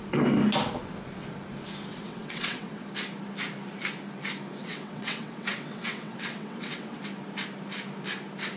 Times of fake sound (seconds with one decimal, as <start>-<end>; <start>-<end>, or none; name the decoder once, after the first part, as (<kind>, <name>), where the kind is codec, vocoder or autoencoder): 1.9-2.8 (vocoder, WaveNeXt); 4.6-7.0